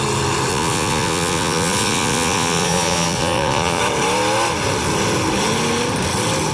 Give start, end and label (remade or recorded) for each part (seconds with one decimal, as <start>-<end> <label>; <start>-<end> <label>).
0.0-0.5 recorded; 0.5-3.8 remade; 3.8-6.5 recorded